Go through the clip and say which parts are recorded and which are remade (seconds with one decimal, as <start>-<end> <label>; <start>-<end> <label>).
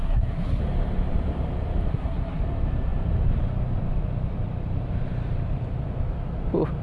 0.0-0.6 remade; 0.6-1.9 recorded; 1.9-2.4 remade; 2.4-6.8 recorded